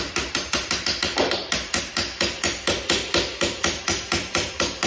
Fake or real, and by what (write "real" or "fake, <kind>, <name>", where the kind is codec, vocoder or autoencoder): real